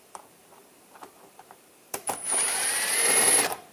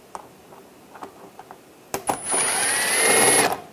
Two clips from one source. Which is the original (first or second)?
second